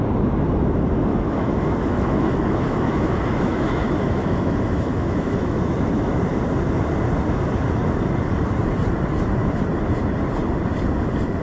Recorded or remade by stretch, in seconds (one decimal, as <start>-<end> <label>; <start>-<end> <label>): 0.0-1.1 recorded; 1.1-6.2 remade; 6.2-11.4 recorded